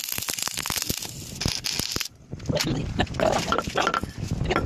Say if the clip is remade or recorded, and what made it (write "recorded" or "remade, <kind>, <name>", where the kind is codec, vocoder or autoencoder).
recorded